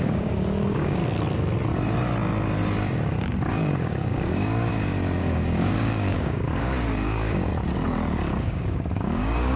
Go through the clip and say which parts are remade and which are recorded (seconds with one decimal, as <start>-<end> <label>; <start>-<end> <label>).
0.0-1.0 remade; 1.0-3.5 recorded; 3.5-4.7 remade; 4.7-5.2 recorded; 5.2-7.5 remade; 7.5-8.4 recorded; 8.4-9.6 remade